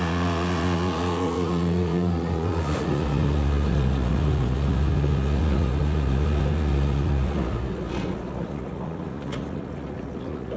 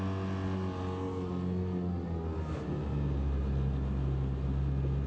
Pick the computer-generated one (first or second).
first